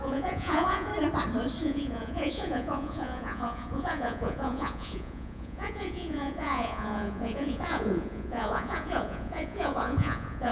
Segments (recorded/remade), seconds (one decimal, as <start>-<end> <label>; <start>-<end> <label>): 0.0-0.9 remade; 0.9-1.6 recorded; 1.6-10.5 remade